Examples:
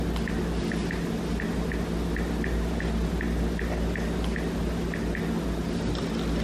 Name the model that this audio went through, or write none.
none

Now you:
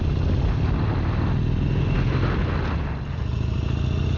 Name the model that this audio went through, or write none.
none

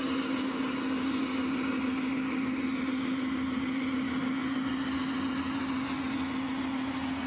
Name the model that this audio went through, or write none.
none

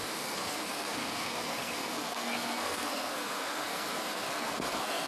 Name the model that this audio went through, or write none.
codec, SNAC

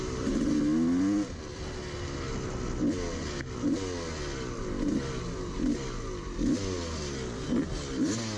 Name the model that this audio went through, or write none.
none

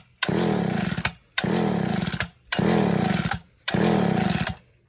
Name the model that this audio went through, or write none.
none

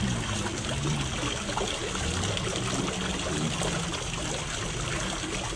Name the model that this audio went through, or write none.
none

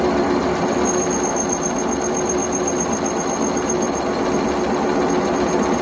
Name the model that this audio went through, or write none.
none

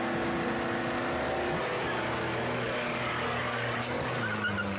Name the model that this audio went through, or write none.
none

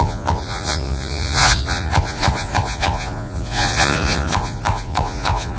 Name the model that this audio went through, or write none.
vocoder, Vocos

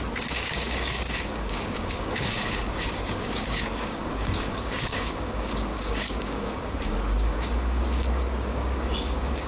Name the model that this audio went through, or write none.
codec, DAC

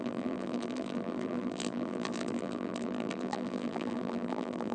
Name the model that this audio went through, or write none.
vocoder, BigVGAN v2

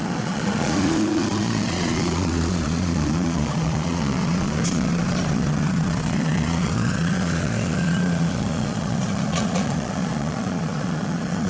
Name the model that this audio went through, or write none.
vocoder, Vocos